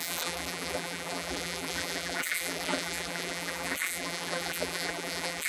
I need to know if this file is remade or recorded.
remade